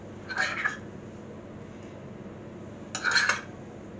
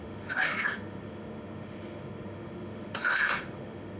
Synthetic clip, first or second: second